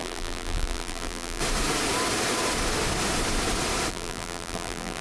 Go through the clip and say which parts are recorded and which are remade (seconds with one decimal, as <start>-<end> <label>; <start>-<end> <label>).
0.0-1.4 remade; 1.4-3.9 recorded; 3.9-5.0 remade